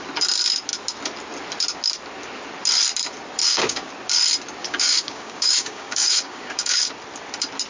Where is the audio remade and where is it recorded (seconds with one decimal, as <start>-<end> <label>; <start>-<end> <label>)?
0.0-3.4 recorded; 3.4-3.9 remade; 3.9-4.6 recorded; 4.6-6.9 remade; 6.9-7.7 recorded